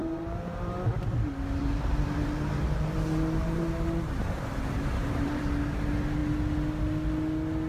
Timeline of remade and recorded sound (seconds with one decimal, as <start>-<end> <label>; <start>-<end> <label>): 0.0-1.0 remade; 1.0-1.6 recorded; 1.6-5.4 remade; 5.4-7.7 recorded